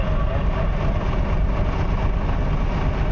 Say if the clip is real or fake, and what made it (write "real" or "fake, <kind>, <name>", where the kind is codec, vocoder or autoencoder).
real